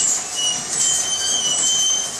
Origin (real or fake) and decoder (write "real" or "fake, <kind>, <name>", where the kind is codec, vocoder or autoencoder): real